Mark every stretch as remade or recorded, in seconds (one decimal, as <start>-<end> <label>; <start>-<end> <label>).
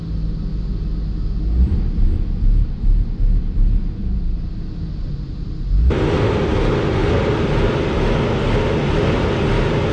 0.0-9.9 recorded